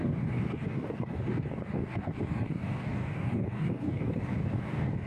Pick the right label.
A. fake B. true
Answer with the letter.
A